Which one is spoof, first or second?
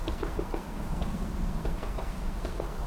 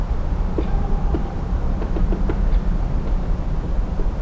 first